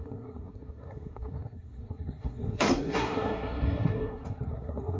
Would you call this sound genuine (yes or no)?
no